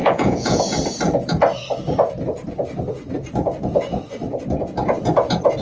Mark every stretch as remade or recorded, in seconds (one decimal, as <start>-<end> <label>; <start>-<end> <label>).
0.0-0.6 remade; 0.6-5.6 recorded